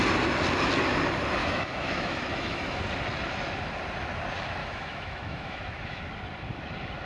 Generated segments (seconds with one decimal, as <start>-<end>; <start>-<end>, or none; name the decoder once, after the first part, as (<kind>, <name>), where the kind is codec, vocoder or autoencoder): 1.4-2.8 (autoencoder, DAC-VAE); 4.6-6.0